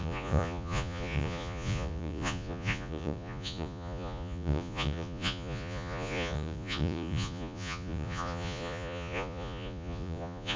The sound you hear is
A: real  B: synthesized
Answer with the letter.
B